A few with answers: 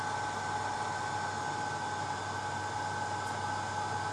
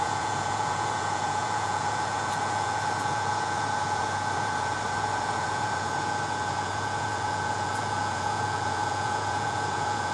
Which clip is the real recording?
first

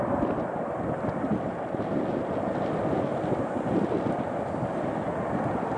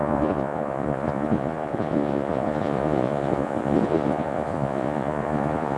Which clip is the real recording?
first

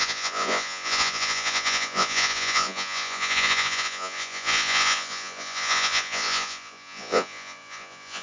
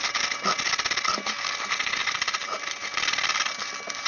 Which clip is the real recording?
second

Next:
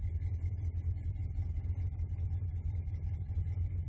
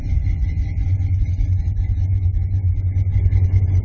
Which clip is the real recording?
first